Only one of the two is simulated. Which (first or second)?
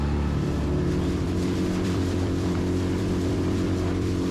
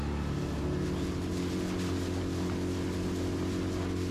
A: first